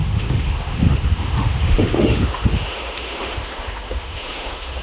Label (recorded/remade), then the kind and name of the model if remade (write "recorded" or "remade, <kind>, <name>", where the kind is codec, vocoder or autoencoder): remade, autoencoder, DAC-VAE